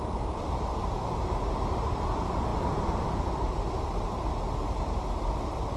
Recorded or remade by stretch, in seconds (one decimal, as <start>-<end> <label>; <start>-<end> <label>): 0.0-5.8 recorded